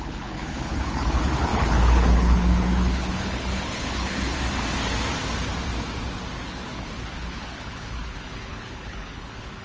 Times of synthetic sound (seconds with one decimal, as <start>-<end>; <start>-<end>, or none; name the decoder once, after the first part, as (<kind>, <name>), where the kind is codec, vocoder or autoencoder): 0.0-4.3 (codec, HILCodec); 6.4-9.6

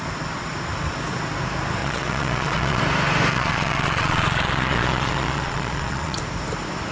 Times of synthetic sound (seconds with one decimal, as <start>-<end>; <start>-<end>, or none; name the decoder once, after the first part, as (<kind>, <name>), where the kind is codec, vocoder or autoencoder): 1.8-2.8 (vocoder, Vocos); 3.3-6.2

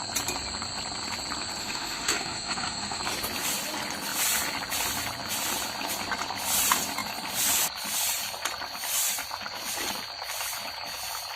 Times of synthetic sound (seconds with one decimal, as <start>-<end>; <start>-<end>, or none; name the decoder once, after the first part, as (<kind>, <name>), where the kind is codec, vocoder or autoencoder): 1.6-3.0 (autoencoder, DAC-VAE)

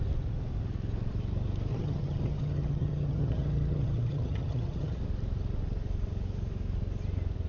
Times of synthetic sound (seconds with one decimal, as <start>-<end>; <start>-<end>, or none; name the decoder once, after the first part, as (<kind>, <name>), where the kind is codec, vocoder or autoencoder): 1.7-5.0 (vocoder, HiFi-GAN)

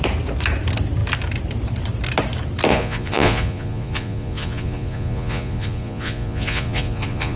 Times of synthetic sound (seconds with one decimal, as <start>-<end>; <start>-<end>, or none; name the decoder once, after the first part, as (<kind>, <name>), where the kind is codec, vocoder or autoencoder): 2.7-7.4 (vocoder, Vocos)

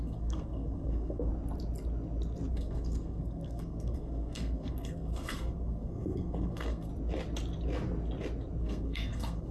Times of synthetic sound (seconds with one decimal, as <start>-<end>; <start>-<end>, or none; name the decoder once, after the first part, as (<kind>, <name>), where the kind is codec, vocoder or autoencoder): 0.0-1.3 (codec, SNAC); 2.5-6.9; 8.6-9.5

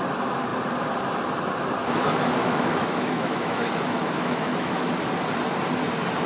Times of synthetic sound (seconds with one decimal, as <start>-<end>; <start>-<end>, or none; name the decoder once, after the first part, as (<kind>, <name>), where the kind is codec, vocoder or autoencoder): 2.4-4.9 (autoencoder, DAC-VAE)